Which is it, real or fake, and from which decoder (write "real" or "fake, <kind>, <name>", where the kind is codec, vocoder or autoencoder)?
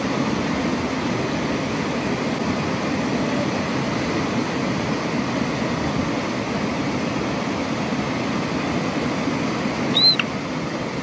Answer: real